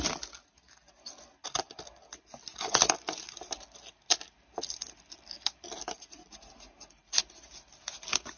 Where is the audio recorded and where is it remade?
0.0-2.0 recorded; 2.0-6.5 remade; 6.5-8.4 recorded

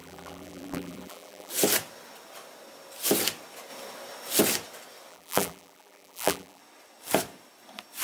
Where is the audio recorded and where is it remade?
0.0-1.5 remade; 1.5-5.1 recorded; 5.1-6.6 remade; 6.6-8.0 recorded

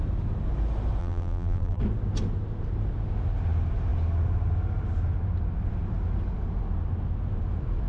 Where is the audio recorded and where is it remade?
0.0-1.0 recorded; 1.0-1.8 remade; 1.8-7.9 recorded

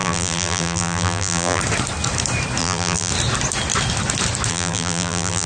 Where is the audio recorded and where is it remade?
0.0-1.6 remade; 1.6-2.6 recorded; 2.6-3.1 remade; 3.1-4.5 recorded; 4.5-5.5 remade

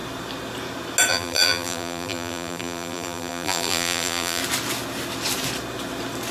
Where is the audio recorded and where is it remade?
0.0-1.1 recorded; 1.1-4.4 remade; 4.4-6.3 recorded

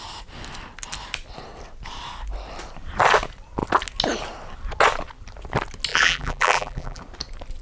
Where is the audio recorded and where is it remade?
0.0-5.9 recorded; 5.9-7.0 remade; 7.0-7.6 recorded